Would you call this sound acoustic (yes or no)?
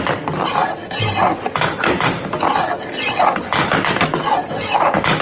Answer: yes